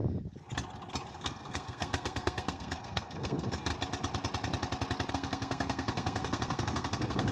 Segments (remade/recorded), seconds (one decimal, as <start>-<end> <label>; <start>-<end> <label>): 0.0-1.1 recorded; 1.1-3.7 remade; 3.7-5.1 recorded; 5.1-7.3 remade